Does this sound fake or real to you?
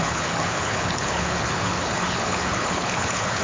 fake